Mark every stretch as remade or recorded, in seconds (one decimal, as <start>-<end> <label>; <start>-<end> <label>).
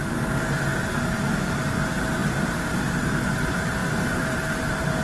0.0-2.2 recorded; 2.2-2.8 remade; 2.8-3.8 recorded; 3.8-5.0 remade